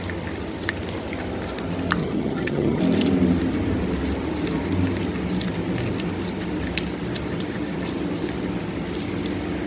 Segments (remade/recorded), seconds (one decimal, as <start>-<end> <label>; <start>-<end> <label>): 0.0-2.0 recorded; 2.0-2.8 remade; 2.8-9.7 recorded

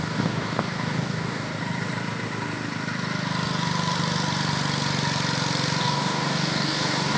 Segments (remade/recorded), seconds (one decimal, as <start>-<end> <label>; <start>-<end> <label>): 0.0-1.5 remade; 1.5-5.8 recorded; 5.8-7.2 remade

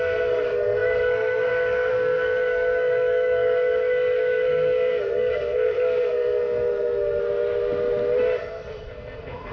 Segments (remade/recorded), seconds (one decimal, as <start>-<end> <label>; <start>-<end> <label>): 0.0-7.2 remade; 7.2-8.4 recorded; 8.4-9.5 remade